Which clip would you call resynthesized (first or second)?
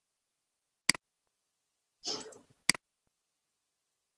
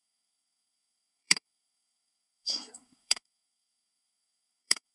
second